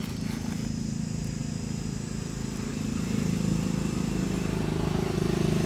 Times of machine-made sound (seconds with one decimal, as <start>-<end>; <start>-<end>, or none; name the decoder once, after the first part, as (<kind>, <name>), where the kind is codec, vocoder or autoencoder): none